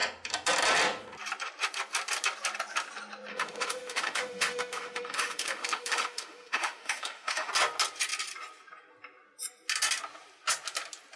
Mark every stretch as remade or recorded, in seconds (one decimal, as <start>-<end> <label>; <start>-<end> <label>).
0.0-3.3 recorded; 3.3-7.5 remade; 7.5-11.2 recorded